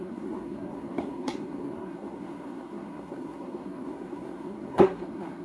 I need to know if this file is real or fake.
fake